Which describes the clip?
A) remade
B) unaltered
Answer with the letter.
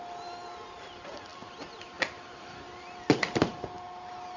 B